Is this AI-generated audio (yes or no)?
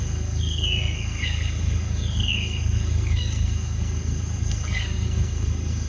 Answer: yes